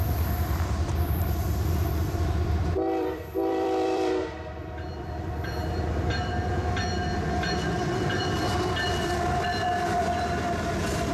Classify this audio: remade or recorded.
remade